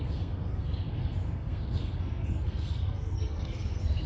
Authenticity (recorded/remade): remade